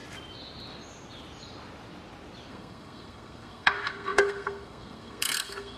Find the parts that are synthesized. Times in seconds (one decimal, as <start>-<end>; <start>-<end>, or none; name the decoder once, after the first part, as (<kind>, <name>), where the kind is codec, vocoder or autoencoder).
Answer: 2.5-5.8 (codec, SNAC)